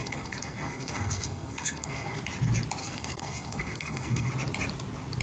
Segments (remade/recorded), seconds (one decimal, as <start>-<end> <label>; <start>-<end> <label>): 0.0-2.2 remade; 2.2-2.8 recorded; 2.8-4.3 remade; 4.3-5.2 recorded